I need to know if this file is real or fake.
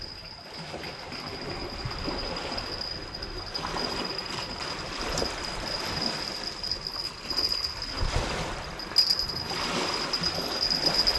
real